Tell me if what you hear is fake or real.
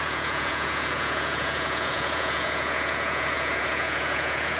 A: fake